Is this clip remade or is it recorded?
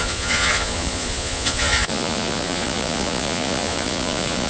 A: remade